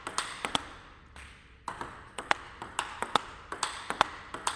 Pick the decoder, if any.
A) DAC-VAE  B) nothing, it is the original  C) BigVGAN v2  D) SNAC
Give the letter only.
B